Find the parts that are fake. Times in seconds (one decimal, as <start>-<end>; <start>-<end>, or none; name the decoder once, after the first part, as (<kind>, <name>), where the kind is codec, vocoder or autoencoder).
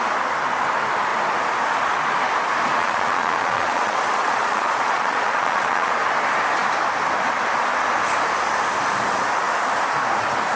2.8-5.9 (vocoder, Vocos)